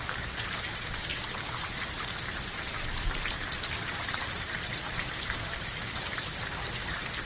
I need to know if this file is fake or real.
fake